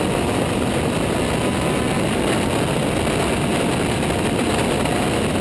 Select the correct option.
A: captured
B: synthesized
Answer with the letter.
A